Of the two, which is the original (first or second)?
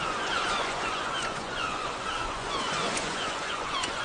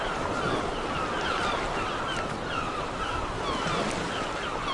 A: second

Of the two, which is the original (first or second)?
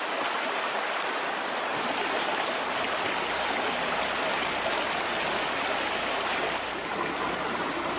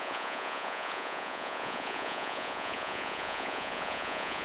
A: first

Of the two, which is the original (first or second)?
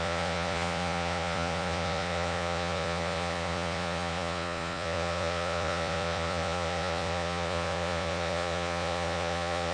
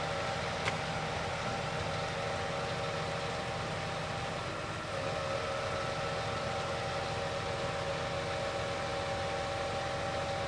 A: second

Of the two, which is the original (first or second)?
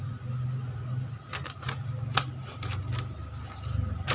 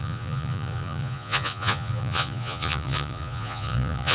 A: first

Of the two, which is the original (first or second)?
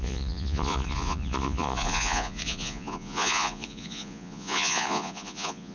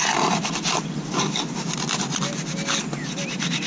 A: second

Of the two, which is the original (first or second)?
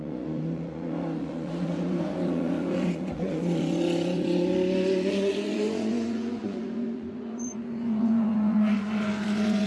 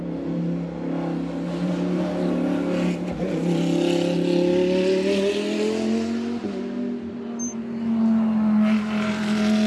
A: second